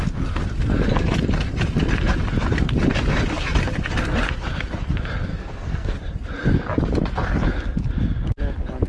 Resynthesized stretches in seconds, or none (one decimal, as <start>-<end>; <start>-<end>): 5.3-6.0